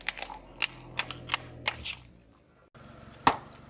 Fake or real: real